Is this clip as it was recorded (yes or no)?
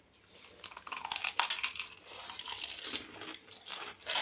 yes